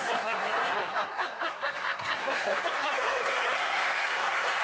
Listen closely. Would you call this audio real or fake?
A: fake